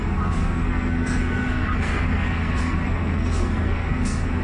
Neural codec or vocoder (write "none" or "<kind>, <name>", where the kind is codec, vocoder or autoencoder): codec, SNAC